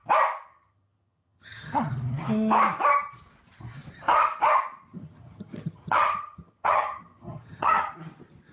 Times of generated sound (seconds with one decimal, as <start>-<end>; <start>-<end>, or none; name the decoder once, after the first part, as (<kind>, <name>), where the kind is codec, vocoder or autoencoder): 0.5-1.9 (vocoder, HiFi-GAN); 4.9-7.9